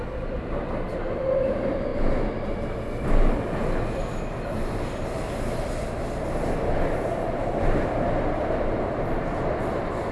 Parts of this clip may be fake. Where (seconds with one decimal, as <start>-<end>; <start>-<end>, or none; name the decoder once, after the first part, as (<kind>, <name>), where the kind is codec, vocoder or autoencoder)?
none